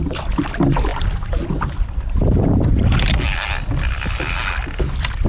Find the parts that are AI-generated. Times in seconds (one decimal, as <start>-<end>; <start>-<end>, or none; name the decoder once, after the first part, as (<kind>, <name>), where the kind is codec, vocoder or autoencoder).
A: none